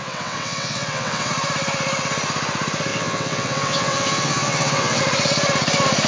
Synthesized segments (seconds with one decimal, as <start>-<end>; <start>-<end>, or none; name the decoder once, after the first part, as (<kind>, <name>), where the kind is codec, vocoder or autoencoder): 0.0-1.3 (vocoder, WaveNeXt); 2.9-5.0